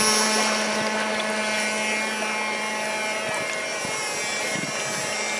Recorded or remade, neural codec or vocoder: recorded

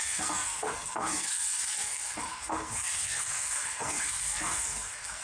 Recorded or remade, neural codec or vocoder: remade, codec, SNAC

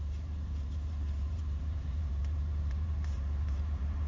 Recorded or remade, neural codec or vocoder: remade, vocoder, BigVGAN v2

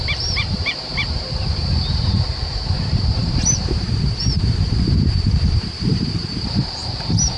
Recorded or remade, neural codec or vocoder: remade, vocoder, BigVGAN v2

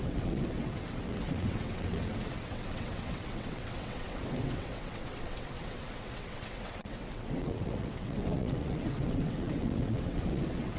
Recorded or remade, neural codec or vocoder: remade, vocoder, WaveNeXt